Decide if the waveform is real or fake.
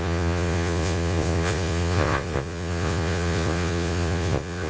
fake